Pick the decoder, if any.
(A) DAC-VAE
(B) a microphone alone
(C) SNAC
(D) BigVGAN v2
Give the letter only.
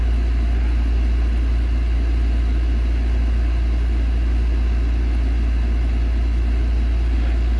B